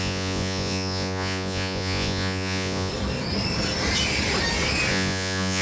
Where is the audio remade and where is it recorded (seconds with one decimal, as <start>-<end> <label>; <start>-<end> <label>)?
0.0-2.9 remade; 2.9-4.9 recorded; 4.9-5.6 remade